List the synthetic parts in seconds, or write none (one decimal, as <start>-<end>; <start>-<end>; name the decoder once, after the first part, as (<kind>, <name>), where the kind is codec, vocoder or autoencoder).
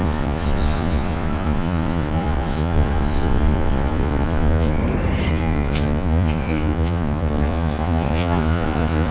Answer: 0.0-4.8 (vocoder, Vocos); 5.3-9.1